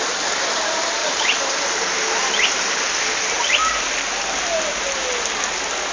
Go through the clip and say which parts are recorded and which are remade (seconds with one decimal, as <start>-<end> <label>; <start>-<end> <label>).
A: 0.0-1.0 recorded; 1.0-2.7 remade; 2.7-5.9 recorded